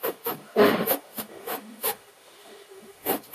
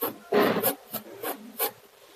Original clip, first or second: second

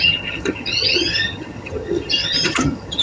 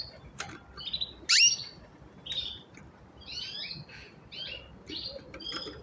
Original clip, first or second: second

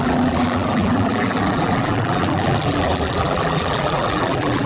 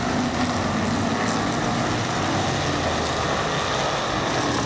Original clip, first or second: second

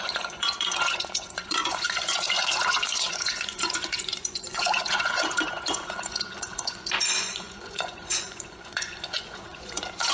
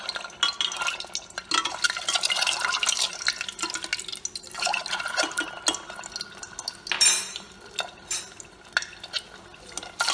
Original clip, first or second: second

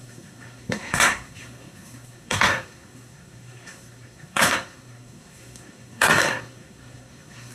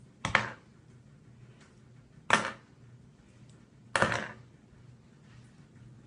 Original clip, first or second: second